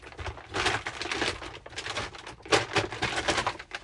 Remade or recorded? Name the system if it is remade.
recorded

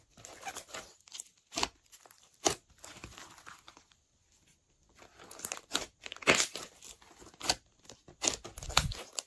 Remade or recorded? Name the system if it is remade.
remade, vocoder, BigVGAN v2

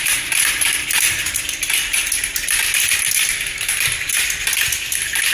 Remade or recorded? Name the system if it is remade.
remade, vocoder, BigVGAN v2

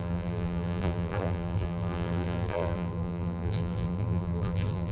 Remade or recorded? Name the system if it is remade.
remade, vocoder, BigVGAN v2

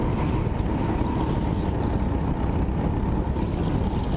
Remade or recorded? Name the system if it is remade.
recorded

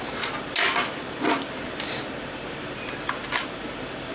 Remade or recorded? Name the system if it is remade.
recorded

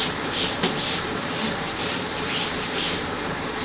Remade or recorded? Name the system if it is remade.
remade, vocoder, BigVGAN v2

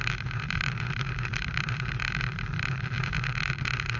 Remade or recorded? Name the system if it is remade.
remade, vocoder, BigVGAN v2